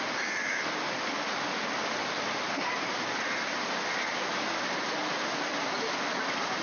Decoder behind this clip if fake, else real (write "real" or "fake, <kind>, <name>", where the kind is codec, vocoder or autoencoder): real